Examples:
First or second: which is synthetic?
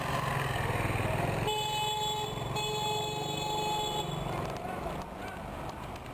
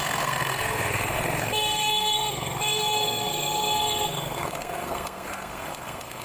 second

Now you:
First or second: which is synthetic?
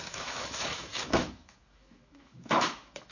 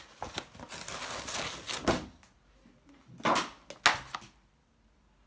first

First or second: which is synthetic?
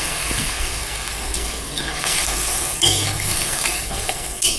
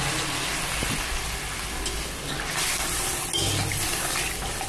first